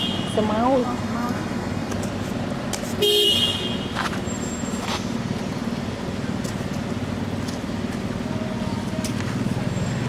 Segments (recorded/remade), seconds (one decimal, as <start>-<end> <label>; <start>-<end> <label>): 0.0-0.8 recorded; 0.8-1.9 remade; 1.9-10.1 recorded